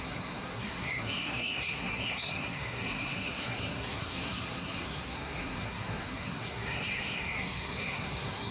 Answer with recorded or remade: remade